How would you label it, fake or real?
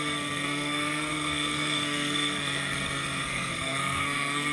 fake